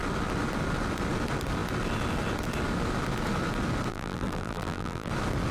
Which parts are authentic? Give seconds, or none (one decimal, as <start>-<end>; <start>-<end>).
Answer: 0.0-3.9; 5.1-5.5